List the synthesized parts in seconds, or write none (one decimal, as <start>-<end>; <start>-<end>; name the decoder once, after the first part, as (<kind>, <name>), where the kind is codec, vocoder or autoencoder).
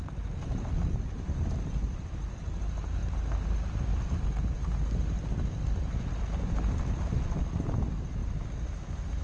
none